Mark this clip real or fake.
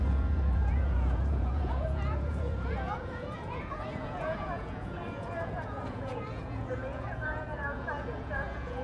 fake